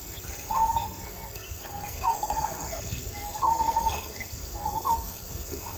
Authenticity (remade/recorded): remade